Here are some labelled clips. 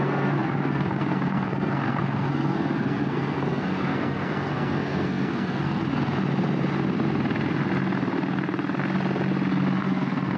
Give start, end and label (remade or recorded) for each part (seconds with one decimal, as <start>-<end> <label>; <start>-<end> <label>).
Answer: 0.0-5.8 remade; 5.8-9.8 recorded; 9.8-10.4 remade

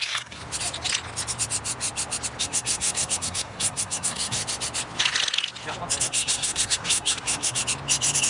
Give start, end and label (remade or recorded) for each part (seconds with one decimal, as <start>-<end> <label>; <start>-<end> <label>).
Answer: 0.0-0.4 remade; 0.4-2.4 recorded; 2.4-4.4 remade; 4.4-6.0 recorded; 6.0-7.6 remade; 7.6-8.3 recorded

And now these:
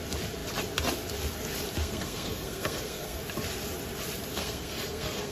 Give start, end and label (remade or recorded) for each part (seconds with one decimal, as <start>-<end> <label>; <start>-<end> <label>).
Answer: 0.0-1.8 recorded; 1.8-3.2 remade; 3.2-4.3 recorded; 4.3-5.3 remade

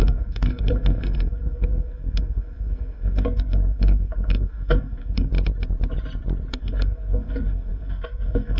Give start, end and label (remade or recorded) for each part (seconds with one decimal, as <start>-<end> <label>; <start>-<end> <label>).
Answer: 0.0-5.3 remade; 5.3-6.5 recorded; 6.5-8.6 remade

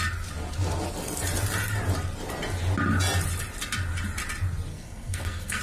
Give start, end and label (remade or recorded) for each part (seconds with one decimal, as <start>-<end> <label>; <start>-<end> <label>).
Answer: 0.0-4.7 recorded; 4.7-5.6 remade

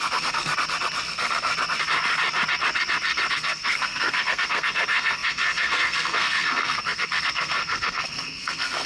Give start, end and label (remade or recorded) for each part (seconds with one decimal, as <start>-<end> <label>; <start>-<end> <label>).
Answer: 0.0-0.5 remade; 0.5-1.1 recorded; 1.1-1.5 remade; 1.5-3.3 recorded; 3.3-8.9 remade